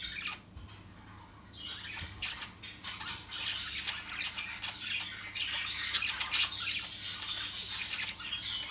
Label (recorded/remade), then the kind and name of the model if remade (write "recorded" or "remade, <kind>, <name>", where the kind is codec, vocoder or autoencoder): recorded